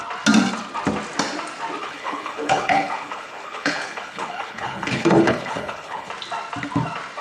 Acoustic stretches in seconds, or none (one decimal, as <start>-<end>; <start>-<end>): 0.0-1.8; 6.1-7.2